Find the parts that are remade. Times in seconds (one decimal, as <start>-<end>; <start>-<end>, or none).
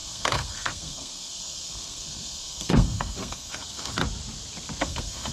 0.0-4.0; 4.8-5.3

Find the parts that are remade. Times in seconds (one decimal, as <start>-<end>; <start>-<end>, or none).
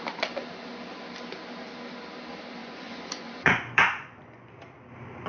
2.6-4.5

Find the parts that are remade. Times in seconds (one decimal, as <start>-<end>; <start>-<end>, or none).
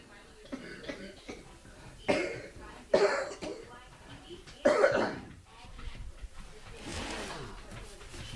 2.2-6.4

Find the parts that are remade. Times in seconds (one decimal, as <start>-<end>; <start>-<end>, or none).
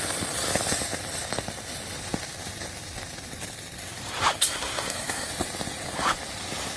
4.4-5.3